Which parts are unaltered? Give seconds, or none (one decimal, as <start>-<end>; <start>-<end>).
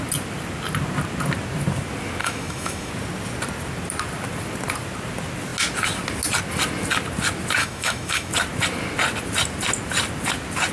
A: 0.0-2.2; 2.9-7.6; 8.3-10.7